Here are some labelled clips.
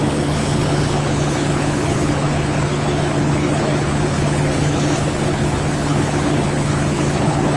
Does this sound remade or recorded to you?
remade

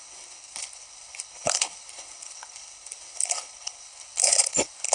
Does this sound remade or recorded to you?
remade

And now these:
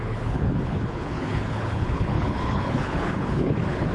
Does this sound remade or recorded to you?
remade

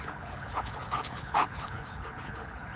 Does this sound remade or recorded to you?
remade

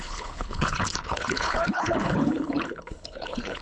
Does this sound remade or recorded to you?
remade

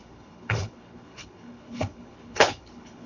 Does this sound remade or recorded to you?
remade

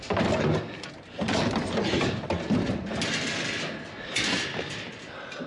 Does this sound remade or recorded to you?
recorded